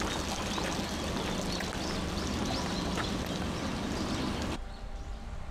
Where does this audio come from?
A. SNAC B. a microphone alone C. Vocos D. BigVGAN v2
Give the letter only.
B